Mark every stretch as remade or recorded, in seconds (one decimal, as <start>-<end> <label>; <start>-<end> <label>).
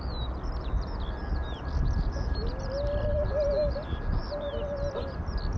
0.0-5.6 recorded